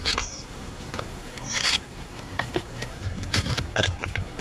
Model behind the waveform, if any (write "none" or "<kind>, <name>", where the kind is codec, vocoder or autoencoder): codec, SNAC